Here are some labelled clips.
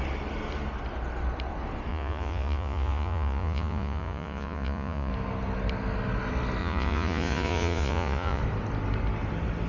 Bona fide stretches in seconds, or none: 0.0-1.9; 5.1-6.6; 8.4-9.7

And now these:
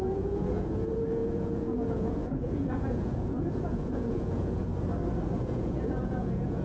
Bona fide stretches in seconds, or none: 4.7-5.4

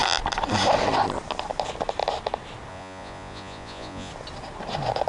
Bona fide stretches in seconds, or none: 0.0-2.7; 4.1-5.1

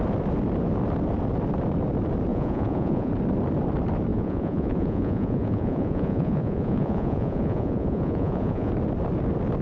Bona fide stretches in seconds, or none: 0.0-2.3; 3.1-4.1; 8.7-9.6